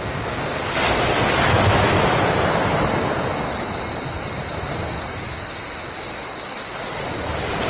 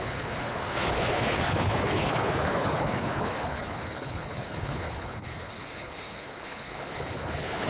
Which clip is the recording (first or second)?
first